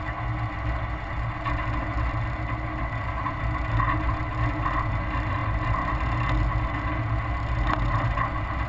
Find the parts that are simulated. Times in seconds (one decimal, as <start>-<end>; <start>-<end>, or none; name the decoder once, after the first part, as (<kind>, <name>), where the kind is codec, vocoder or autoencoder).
none